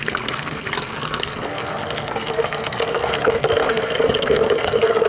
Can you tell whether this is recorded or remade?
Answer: remade